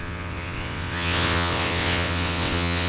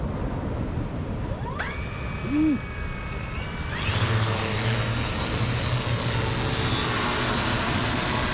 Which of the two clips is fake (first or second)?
first